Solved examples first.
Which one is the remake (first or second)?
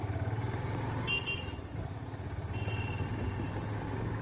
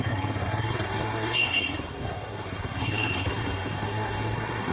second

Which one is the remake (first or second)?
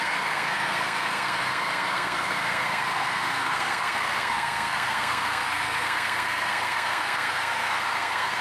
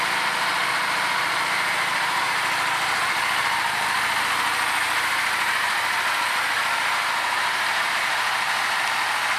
first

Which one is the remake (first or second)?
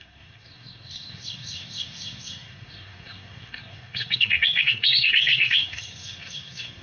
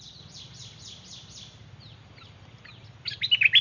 first